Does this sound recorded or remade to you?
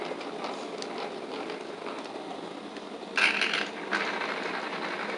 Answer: recorded